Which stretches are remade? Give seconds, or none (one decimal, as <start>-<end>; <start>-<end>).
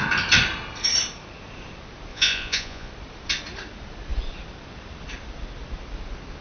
2.1-2.9